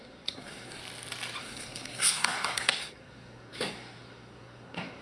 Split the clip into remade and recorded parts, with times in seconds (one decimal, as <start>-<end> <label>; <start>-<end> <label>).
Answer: 0.0-0.8 remade; 0.8-1.4 recorded; 1.4-5.0 remade